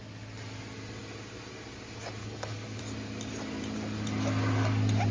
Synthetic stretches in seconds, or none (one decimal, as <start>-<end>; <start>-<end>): 2.2-2.8